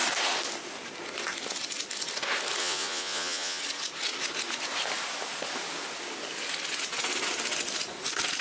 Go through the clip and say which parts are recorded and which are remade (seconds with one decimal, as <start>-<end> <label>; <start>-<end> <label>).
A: 0.0-2.6 recorded; 2.6-3.6 remade; 3.6-8.4 recorded